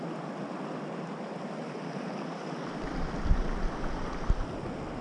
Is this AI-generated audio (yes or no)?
no